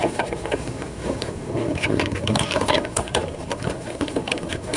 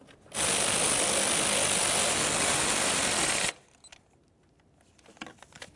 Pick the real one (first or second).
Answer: second